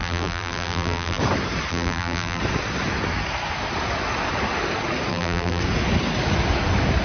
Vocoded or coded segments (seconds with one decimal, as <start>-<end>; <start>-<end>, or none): 0.0-1.2; 1.7-2.4; 5.1-5.6